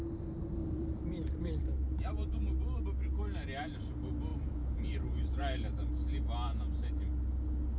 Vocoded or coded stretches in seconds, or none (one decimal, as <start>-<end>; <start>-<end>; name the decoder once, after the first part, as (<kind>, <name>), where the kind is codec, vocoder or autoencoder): 0.6-2.5 (vocoder, BigVGAN v2); 4.3-5.9